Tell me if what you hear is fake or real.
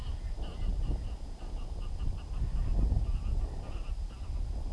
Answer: real